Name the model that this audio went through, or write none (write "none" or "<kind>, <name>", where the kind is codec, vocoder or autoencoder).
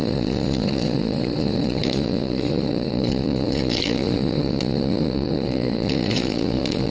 vocoder, Vocos